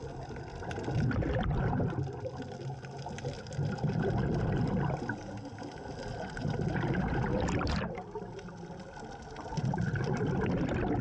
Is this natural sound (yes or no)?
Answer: yes